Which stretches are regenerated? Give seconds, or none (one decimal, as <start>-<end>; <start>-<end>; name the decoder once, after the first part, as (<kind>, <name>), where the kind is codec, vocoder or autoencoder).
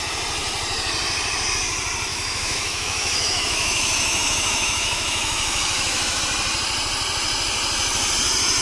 2.1-6.2 (autoencoder, DAC-VAE)